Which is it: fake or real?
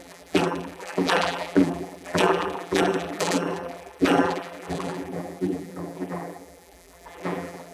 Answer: fake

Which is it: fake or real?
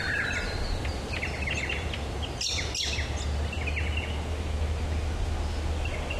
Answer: real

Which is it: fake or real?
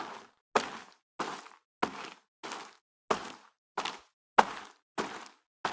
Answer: real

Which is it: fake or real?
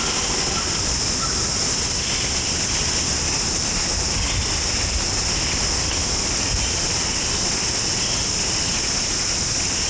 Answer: real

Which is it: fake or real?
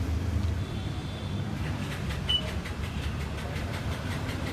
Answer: fake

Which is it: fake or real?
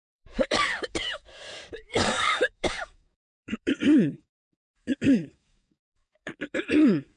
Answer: fake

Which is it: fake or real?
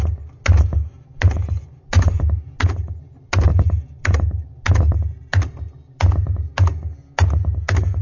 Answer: real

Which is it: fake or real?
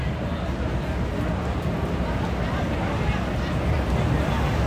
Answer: real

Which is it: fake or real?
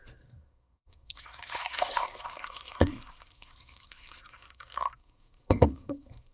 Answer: fake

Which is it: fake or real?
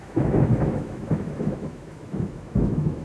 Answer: fake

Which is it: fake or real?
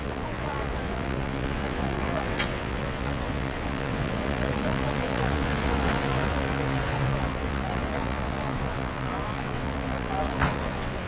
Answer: fake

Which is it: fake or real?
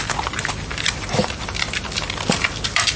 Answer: real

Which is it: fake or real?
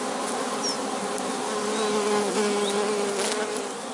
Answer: real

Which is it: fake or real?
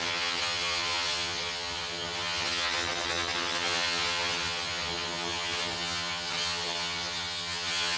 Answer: fake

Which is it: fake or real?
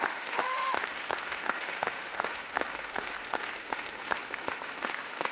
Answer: fake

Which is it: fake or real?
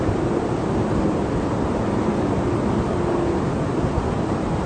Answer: real